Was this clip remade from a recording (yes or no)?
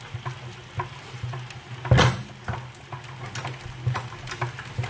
no